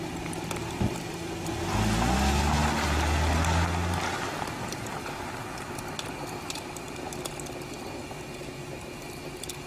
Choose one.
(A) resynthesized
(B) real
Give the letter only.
B